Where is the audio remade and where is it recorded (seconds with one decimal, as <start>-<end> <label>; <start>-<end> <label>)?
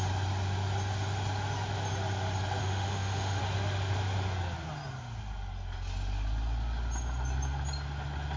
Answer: 0.0-2.6 recorded; 2.6-3.4 remade; 3.4-8.4 recorded